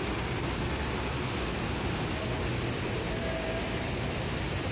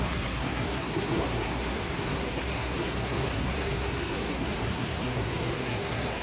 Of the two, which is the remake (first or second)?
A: second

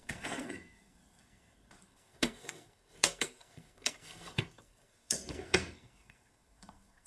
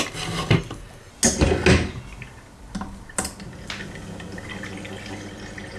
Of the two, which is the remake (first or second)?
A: first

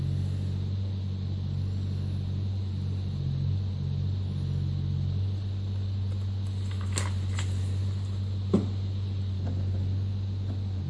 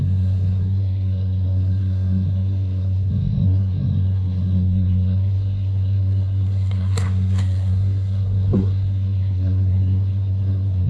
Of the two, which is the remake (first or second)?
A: second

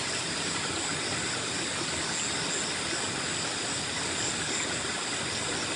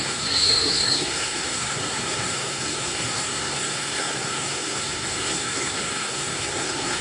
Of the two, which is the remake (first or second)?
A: second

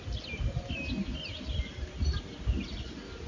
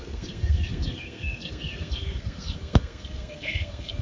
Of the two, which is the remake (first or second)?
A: second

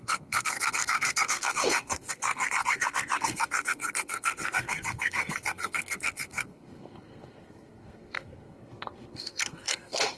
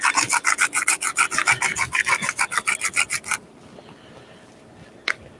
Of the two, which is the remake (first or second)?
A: first